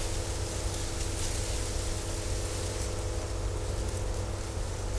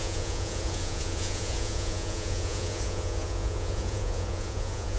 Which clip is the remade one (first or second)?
second